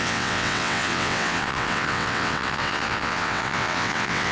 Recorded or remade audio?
remade